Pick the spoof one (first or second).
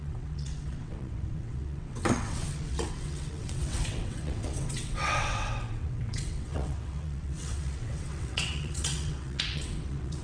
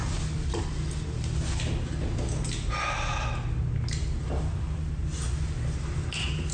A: first